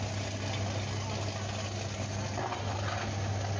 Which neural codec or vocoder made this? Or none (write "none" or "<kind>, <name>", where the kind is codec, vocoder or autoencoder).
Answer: none